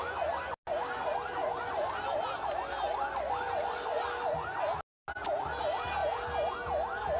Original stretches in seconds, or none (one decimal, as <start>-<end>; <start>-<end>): 0.0-7.2